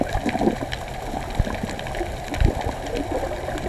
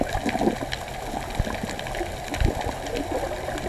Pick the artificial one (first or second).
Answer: first